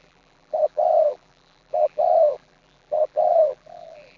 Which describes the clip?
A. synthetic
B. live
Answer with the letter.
A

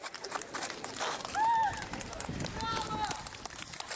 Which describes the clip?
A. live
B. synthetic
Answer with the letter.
A